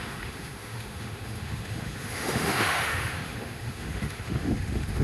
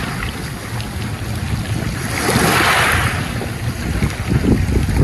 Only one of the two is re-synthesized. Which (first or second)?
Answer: first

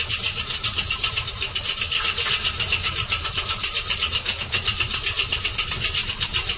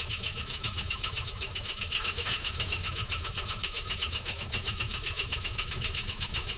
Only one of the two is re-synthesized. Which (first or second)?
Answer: second